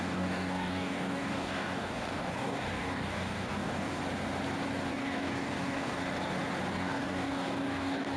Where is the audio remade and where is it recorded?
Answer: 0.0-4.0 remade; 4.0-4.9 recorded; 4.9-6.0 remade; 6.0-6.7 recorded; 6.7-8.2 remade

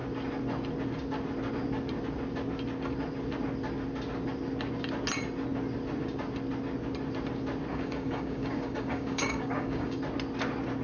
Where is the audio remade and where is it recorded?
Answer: 0.0-7.7 recorded; 7.7-10.0 remade; 10.0-10.8 recorded

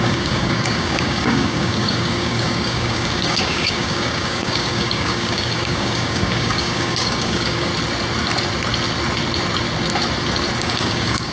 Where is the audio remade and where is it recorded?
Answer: 0.0-7.7 remade; 7.7-10.6 recorded; 10.6-11.3 remade

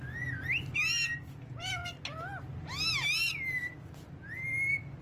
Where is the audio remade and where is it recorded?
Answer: 0.0-5.0 recorded

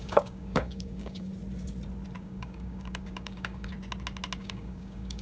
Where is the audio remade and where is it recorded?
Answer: 0.0-1.3 remade; 1.3-2.2 recorded; 2.2-3.7 remade; 3.7-4.4 recorded; 4.4-5.2 remade

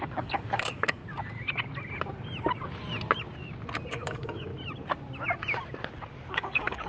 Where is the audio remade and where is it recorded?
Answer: 0.0-1.0 remade; 1.0-3.9 recorded; 3.9-4.5 remade; 4.5-6.3 recorded; 6.3-6.9 remade

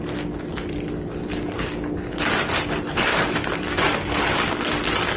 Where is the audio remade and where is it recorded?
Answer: 0.0-1.2 recorded; 1.2-2.3 remade; 2.3-3.1 recorded; 3.1-5.2 remade